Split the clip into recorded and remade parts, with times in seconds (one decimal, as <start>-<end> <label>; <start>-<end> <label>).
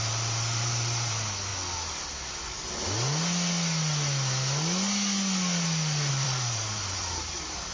0.0-1.5 remade; 1.5-6.1 recorded; 6.1-7.7 remade